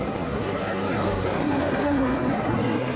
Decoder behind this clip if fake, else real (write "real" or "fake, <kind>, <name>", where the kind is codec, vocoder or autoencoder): fake, codec, SNAC